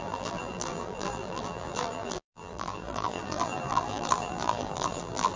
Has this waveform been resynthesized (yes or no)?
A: yes